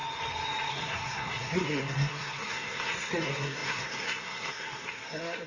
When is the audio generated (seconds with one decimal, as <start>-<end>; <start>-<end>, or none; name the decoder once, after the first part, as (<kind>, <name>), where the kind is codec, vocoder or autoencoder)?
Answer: 0.7-5.5 (codec, SNAC)